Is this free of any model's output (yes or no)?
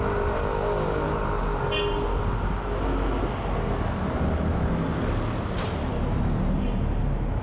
yes